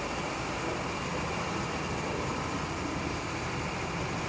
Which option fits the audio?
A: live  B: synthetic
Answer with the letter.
B